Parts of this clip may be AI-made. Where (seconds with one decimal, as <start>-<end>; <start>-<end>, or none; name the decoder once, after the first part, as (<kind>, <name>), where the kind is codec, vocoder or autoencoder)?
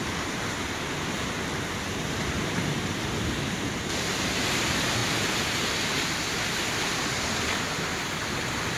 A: 0.0-5.0 (vocoder, BigVGAN v2); 7.4-8.8